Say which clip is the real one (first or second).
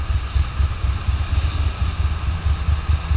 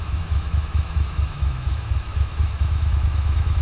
first